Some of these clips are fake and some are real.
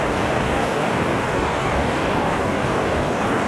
fake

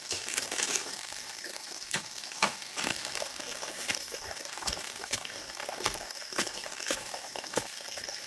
fake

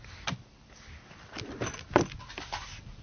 real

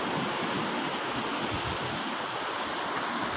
real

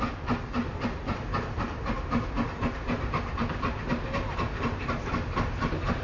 real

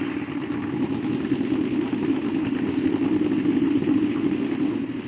real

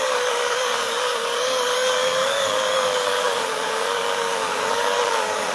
fake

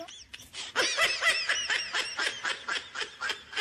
real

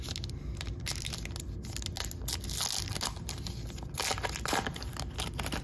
real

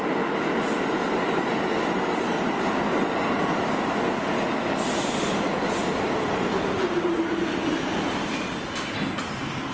real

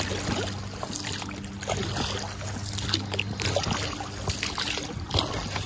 real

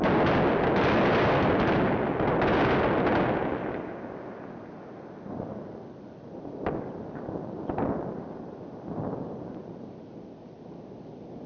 real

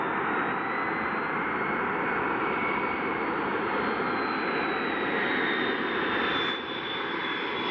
real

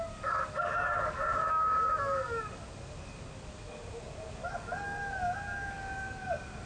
fake